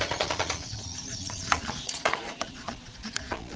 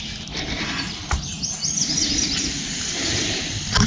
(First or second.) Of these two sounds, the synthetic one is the first